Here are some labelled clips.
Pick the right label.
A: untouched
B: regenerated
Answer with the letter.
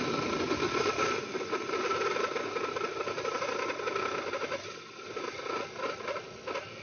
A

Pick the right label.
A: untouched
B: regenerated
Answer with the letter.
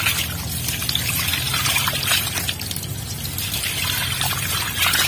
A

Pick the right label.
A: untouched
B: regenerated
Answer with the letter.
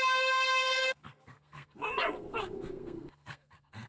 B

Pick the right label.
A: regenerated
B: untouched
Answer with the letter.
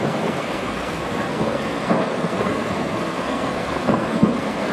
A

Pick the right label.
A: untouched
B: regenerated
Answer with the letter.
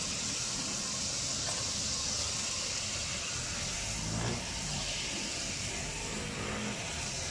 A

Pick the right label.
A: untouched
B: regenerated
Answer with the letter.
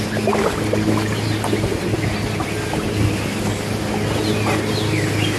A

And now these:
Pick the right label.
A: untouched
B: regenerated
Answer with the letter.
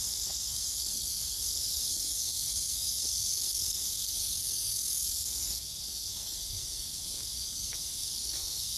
B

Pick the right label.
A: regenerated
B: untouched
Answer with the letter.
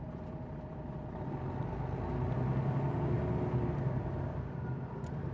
B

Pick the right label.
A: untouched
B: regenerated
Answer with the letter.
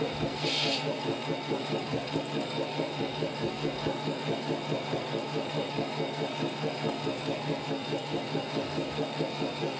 B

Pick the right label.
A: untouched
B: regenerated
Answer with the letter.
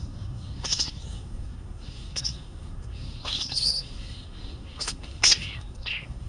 B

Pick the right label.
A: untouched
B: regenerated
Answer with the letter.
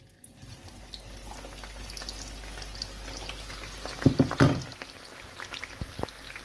A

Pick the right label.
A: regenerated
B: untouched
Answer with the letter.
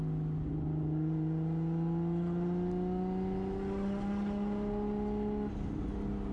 B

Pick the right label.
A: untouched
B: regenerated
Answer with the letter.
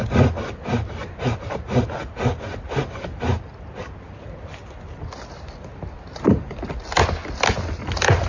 A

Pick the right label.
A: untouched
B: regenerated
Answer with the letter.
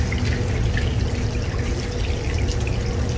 A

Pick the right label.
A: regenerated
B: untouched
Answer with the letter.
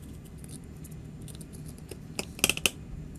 B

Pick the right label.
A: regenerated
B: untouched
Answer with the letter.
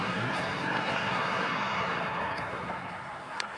A